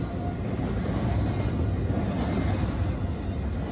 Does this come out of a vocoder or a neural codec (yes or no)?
no